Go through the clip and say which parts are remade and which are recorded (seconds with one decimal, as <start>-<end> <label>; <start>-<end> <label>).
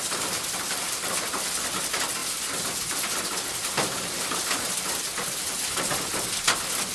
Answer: 0.0-6.9 recorded